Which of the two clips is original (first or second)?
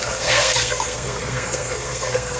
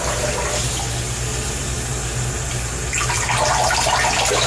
second